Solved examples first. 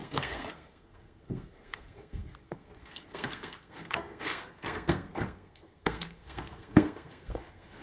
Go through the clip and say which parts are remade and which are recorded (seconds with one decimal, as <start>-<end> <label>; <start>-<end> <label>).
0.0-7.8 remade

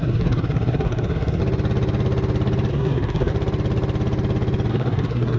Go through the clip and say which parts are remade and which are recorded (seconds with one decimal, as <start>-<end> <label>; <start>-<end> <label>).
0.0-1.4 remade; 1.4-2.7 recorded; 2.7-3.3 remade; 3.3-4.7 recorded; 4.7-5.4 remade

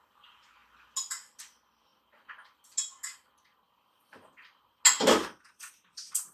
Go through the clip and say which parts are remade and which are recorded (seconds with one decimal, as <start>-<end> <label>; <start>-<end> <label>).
0.0-6.3 recorded

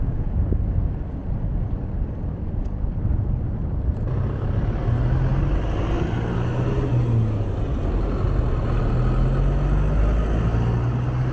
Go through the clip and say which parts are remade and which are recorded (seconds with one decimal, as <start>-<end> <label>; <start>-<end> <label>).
0.0-11.3 recorded

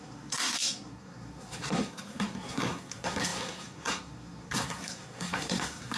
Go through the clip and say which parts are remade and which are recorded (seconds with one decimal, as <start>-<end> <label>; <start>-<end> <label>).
0.0-6.0 remade